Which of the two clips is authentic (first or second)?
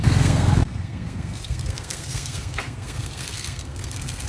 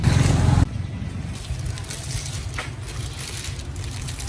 second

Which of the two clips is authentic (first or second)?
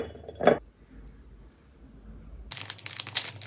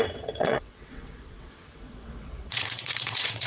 first